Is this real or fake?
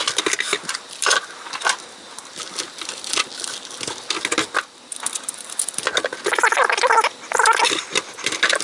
real